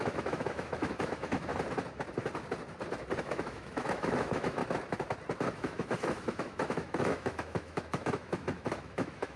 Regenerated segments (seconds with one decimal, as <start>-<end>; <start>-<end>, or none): 0.0-1.5; 3.2-4.6; 5.5-9.4